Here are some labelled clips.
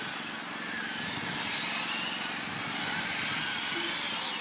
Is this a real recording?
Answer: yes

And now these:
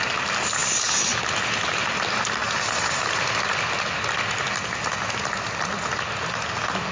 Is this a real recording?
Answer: yes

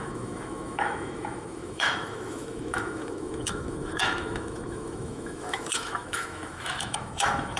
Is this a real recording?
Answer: no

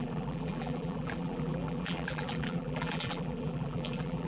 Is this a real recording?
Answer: no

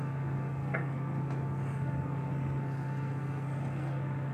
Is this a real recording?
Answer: no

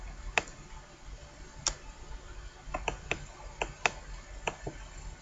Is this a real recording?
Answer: yes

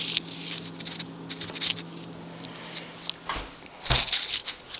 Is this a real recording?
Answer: yes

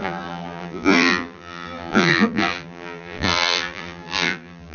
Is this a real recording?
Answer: no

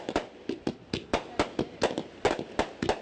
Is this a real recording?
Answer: yes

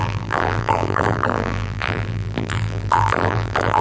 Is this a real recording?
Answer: no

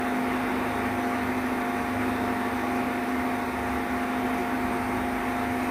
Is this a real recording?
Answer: yes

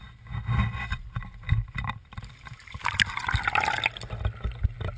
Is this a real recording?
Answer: yes